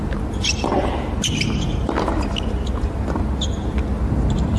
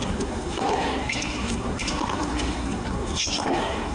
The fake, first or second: second